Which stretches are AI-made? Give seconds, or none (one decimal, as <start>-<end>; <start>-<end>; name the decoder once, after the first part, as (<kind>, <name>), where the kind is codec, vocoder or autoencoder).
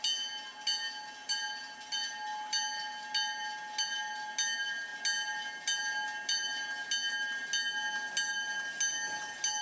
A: none